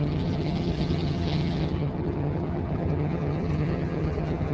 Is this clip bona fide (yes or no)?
no